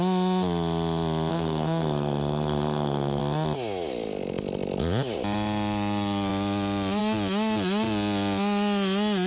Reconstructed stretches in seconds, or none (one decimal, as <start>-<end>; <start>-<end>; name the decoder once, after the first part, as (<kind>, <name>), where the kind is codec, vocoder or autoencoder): 1.3-3.2 (codec, SNAC)